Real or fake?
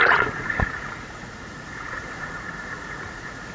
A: fake